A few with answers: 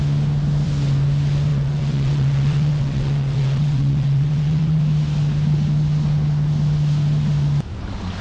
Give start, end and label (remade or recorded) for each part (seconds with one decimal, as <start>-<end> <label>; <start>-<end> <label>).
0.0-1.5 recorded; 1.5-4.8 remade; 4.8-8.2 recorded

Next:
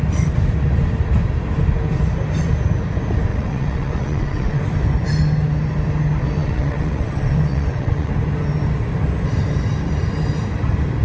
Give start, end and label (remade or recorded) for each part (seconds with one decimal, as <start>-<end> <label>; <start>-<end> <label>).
0.0-3.3 recorded; 3.3-4.6 remade; 4.6-6.4 recorded; 6.4-8.1 remade; 8.1-11.0 recorded

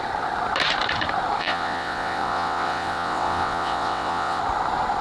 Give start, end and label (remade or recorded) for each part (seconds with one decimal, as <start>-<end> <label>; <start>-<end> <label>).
0.0-1.4 recorded; 1.4-4.4 remade; 4.4-5.0 recorded

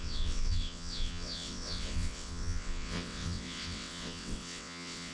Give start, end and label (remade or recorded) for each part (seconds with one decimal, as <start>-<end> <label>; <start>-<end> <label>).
0.0-5.1 remade

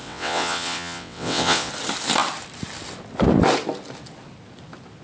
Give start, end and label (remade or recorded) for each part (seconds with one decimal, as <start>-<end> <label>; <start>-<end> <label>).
0.0-1.7 remade; 1.7-5.0 recorded

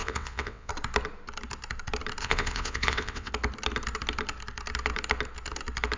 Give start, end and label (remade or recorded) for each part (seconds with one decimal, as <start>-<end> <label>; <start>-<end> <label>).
0.0-0.7 remade; 0.7-2.2 recorded; 2.2-3.3 remade; 3.3-6.0 recorded

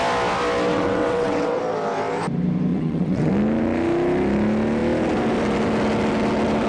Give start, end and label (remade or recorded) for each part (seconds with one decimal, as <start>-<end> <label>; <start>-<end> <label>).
0.0-0.7 recorded; 0.7-1.6 remade; 1.6-2.7 recorded; 2.7-3.3 remade; 3.3-6.7 recorded